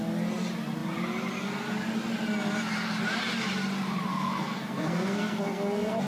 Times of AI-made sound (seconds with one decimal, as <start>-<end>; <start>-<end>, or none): 4.1-6.1